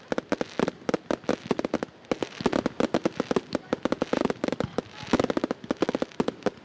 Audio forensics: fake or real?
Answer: real